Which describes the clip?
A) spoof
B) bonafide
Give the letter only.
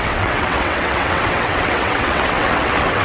A